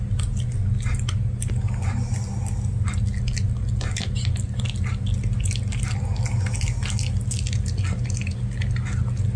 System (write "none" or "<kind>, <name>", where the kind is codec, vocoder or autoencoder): none